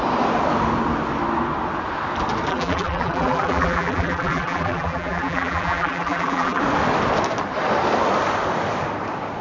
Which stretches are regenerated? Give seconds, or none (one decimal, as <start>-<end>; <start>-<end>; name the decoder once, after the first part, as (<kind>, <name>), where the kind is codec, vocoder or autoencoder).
2.5-6.6 (vocoder, BigVGAN v2)